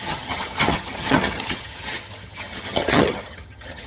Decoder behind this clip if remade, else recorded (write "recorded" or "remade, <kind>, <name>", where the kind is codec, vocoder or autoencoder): remade, vocoder, HiFi-GAN